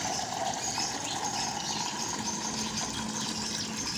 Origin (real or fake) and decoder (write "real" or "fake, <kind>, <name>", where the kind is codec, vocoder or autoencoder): real